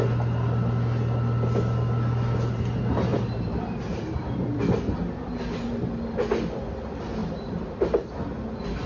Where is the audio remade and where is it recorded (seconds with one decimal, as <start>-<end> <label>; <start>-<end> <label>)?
0.0-3.1 recorded; 3.1-5.2 remade; 5.2-7.2 recorded; 7.2-7.8 remade; 7.8-8.9 recorded